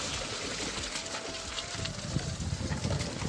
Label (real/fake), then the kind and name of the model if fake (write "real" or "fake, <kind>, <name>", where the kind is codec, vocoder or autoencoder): real